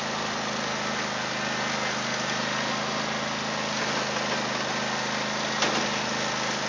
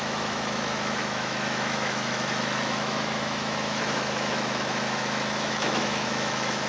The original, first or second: first